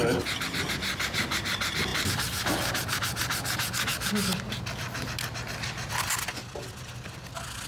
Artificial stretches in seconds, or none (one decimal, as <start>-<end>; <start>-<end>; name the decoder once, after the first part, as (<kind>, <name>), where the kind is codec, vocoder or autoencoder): none